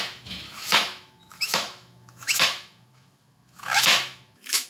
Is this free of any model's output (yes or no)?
no